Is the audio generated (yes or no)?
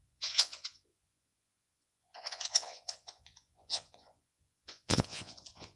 yes